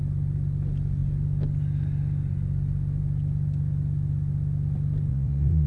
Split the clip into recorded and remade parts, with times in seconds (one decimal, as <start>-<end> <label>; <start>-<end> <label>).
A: 0.0-5.1 recorded; 5.1-5.7 remade